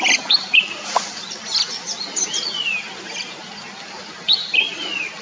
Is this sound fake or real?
real